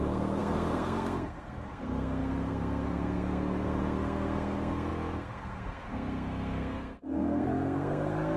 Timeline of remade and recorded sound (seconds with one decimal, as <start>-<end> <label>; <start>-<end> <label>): 0.0-8.4 remade